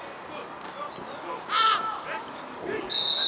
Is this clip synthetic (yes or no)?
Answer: no